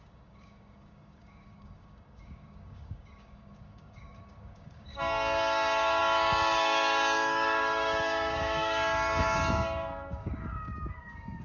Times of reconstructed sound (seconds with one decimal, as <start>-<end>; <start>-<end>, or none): 0.0-11.4